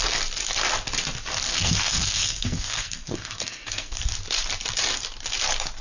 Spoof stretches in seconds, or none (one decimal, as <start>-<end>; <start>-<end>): 1.5-4.0